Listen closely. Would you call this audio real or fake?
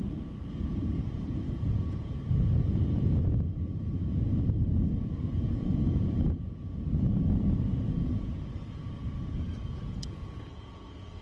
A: fake